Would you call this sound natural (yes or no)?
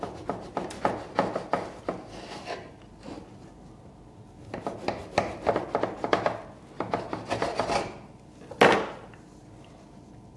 yes